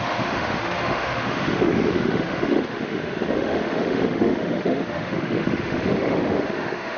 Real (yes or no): no